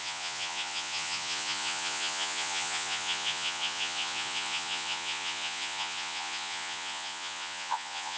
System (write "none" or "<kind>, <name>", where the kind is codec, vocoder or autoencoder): vocoder, Vocos